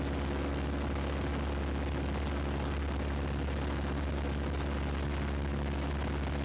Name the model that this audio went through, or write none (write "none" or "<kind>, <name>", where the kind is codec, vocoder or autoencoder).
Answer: none